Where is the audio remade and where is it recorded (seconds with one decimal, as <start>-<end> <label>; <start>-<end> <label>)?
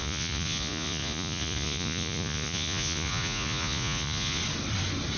0.0-4.4 remade; 4.4-5.2 recorded